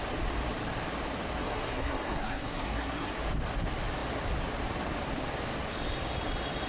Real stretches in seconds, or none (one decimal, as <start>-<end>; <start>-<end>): 0.0-1.4; 3.1-6.7